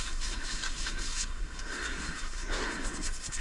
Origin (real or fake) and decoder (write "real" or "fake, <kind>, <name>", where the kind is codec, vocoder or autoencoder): fake, codec, SNAC